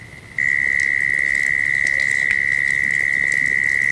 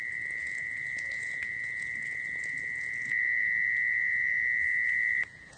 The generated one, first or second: second